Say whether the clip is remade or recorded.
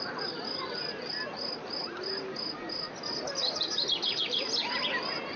recorded